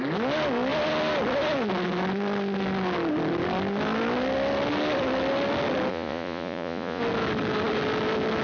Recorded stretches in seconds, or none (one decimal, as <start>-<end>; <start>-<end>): 0.0-5.9; 7.0-8.4